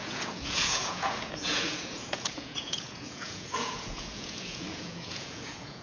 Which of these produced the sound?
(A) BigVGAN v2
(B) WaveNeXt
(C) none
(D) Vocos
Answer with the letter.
D